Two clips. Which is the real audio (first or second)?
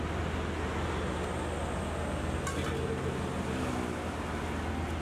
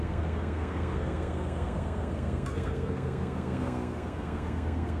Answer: first